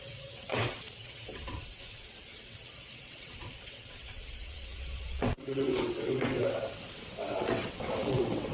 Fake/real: fake